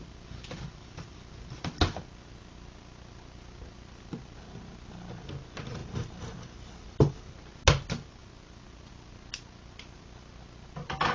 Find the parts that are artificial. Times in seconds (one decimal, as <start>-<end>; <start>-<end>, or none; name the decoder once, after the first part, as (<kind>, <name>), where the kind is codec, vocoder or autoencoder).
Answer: 5.8-7.3 (vocoder, BigVGAN v2)